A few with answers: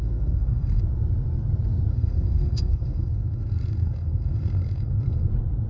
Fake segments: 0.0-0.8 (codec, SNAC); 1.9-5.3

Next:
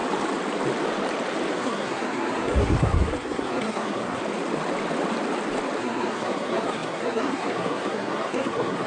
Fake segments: 1.5-4.2 (codec, SNAC); 5.8-8.9

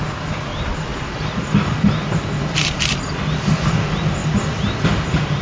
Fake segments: none

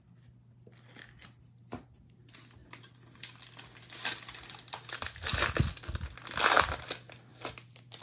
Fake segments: none